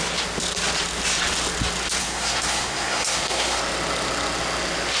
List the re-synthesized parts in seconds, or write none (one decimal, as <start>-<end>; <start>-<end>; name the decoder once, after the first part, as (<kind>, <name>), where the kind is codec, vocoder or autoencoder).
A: 2.0-3.6 (codec, SNAC)